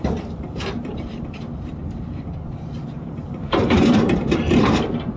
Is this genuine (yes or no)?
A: no